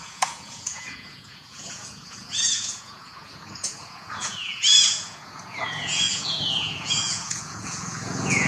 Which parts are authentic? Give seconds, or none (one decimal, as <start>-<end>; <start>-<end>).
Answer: none